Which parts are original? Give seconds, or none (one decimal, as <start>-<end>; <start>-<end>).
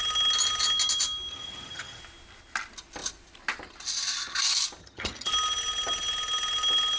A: 0.0-1.3; 2.0-4.8; 5.3-7.0